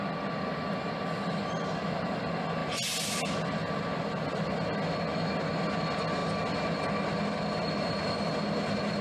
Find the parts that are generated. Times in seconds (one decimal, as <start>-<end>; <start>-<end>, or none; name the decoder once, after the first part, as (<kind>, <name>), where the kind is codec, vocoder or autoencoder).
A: none